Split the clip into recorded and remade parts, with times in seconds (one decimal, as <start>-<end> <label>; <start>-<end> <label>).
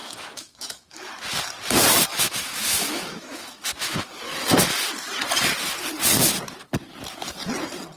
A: 0.0-1.1 remade; 1.1-2.1 recorded; 2.1-4.1 remade; 4.1-8.0 recorded